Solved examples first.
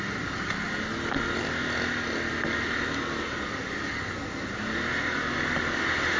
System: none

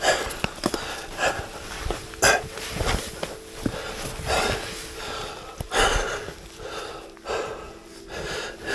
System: none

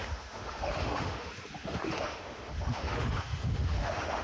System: autoencoder, DAC-VAE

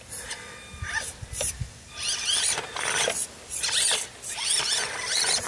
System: none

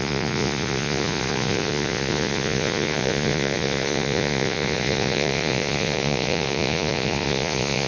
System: vocoder, Vocos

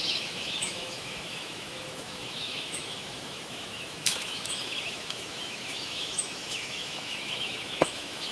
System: autoencoder, DAC-VAE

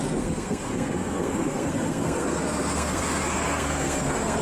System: codec, SNAC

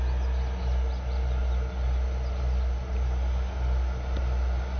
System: none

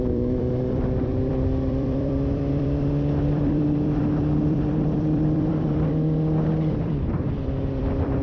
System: vocoder, BigVGAN v2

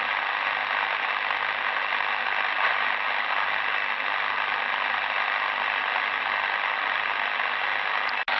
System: none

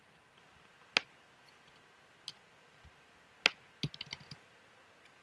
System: none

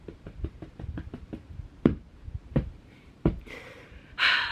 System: vocoder, BigVGAN v2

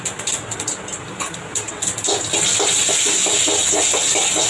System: none